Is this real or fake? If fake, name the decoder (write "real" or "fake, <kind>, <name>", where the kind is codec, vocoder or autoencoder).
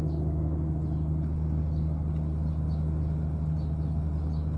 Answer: real